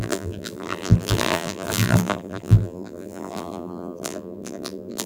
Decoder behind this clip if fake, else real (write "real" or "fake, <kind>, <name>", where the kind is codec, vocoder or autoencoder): fake, vocoder, BigVGAN v2